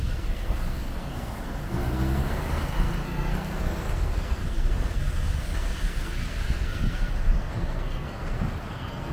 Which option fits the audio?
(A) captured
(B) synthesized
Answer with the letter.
B